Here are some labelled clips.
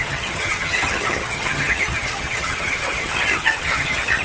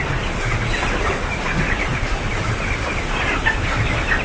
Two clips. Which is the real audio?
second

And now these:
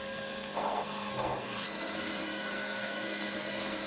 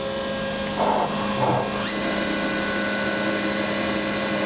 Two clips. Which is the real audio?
second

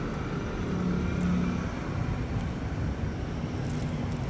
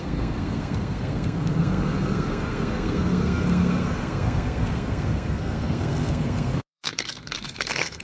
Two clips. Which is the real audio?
first